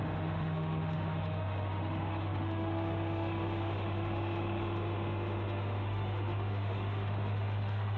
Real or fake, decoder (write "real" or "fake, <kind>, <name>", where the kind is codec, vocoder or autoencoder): fake, autoencoder, DAC-VAE